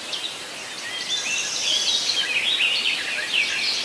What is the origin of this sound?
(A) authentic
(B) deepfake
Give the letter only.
A